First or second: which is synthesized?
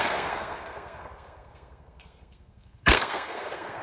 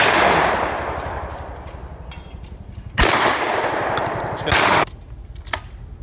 first